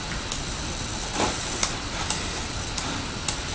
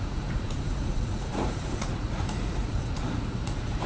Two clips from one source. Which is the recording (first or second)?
first